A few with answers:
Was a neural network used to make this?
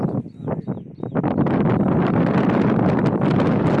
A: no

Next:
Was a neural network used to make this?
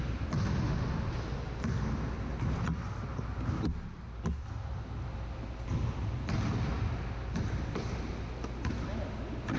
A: no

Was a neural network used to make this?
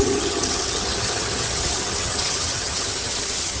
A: yes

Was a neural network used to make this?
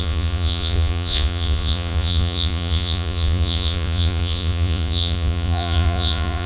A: yes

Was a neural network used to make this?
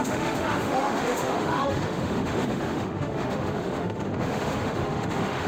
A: yes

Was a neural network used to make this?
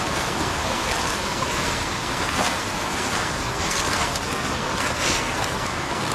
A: yes